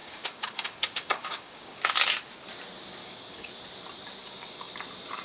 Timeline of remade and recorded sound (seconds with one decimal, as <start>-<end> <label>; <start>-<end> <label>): 0.0-1.8 remade; 1.8-3.0 recorded; 3.0-3.5 remade; 3.5-4.2 recorded; 4.2-4.7 remade; 4.7-5.2 recorded